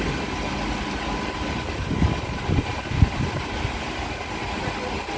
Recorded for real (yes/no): yes